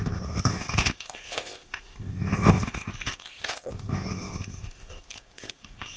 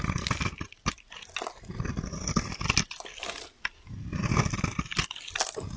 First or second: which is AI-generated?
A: first